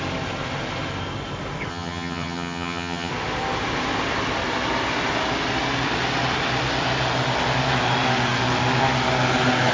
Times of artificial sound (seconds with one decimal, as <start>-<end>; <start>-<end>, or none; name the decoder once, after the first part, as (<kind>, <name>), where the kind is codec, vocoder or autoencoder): 1.7-3.1 (vocoder, HiFi-GAN)